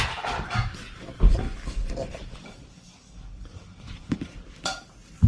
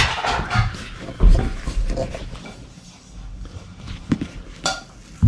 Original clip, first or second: second